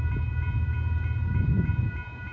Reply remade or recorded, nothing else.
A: recorded